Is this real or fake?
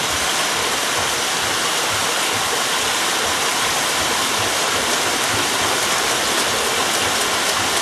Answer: real